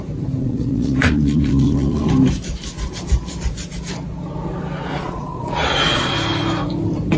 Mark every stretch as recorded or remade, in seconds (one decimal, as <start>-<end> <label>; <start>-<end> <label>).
0.0-0.4 recorded; 0.4-2.1 remade; 2.1-5.0 recorded; 5.0-6.1 remade; 6.1-7.2 recorded